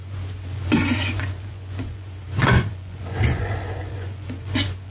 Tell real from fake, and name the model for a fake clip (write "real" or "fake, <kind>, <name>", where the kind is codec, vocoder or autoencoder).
fake, vocoder, Vocos